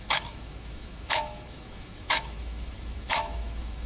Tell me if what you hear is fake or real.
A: fake